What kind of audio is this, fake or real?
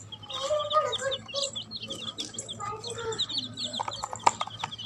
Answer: real